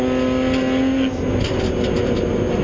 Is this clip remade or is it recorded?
recorded